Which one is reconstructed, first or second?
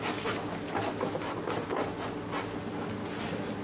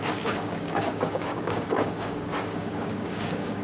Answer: second